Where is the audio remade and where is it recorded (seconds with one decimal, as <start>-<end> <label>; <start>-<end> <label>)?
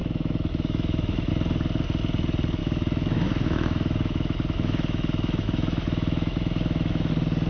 0.0-1.3 remade; 1.3-2.6 recorded; 2.6-7.1 remade; 7.1-7.5 recorded